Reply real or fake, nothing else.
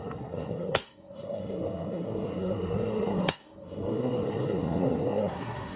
fake